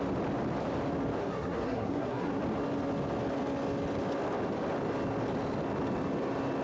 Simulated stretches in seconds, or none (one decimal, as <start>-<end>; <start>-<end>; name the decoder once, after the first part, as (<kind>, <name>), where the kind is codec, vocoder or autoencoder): 1.2-2.4 (codec, SNAC)